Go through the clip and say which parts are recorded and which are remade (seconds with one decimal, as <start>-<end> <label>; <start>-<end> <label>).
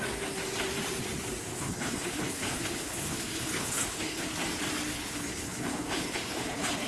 0.0-1.5 recorded; 1.5-4.3 remade; 4.3-4.9 recorded; 4.9-6.9 remade